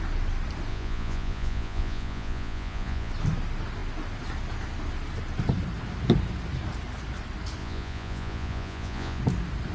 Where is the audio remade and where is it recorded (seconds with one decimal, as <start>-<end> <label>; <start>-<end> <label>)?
0.0-0.7 recorded; 0.7-3.1 remade; 3.1-7.6 recorded; 7.6-9.2 remade; 9.2-9.7 recorded